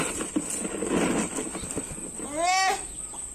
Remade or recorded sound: recorded